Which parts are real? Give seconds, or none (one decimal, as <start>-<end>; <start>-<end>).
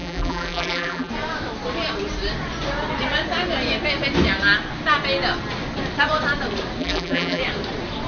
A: 1.1-6.8; 7.4-8.1